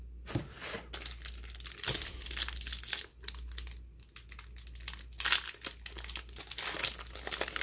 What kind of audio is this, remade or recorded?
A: recorded